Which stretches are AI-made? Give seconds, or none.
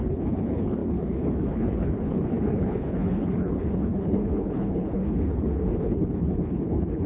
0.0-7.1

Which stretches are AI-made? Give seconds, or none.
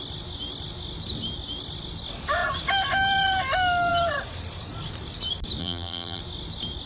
5.6-6.2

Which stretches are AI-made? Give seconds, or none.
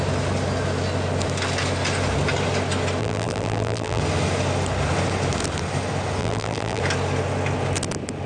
3.0-4.0; 6.2-6.8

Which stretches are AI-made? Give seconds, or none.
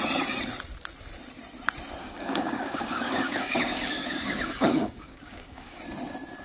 2.0-5.8